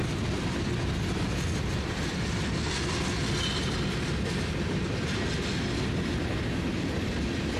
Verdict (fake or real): real